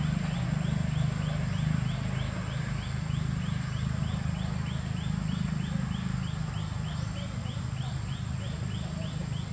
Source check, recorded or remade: recorded